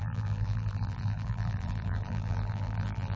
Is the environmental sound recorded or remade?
remade